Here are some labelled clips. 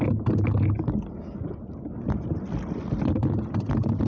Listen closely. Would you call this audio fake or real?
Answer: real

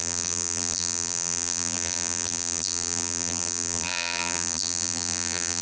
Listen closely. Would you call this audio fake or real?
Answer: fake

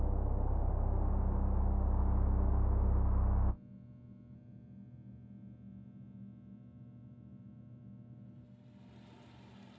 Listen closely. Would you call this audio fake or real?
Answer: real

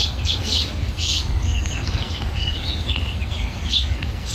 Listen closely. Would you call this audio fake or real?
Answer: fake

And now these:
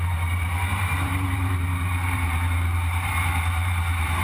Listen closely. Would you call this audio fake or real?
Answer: fake